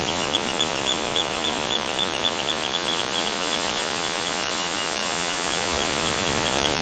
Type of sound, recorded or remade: remade